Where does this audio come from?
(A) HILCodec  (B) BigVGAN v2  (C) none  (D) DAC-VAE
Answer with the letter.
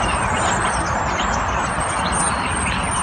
C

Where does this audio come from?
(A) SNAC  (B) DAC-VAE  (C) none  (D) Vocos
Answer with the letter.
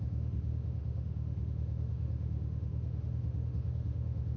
B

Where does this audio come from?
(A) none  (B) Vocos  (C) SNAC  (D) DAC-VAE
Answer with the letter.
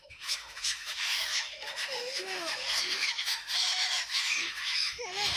D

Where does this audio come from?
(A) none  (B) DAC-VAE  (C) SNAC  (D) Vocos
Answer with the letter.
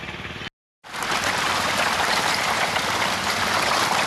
A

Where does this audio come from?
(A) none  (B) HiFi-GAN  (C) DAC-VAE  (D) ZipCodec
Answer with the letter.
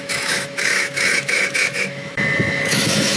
C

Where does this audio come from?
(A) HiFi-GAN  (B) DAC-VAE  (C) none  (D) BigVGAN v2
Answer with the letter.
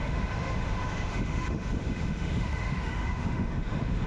B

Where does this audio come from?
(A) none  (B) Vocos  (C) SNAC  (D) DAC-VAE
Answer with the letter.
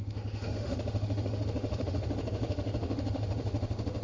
D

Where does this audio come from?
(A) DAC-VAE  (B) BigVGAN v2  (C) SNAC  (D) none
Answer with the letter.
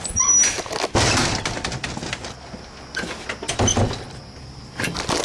D